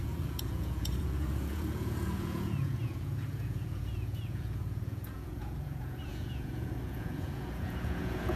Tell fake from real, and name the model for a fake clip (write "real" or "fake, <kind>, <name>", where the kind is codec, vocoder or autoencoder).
fake, vocoder, Vocos